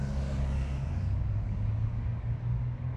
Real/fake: fake